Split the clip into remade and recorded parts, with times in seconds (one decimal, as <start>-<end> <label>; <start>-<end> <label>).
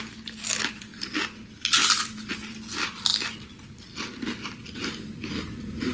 0.0-5.9 recorded